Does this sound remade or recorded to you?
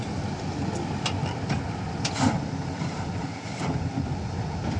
remade